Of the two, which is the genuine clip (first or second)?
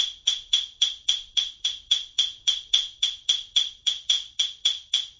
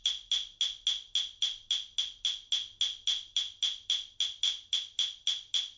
second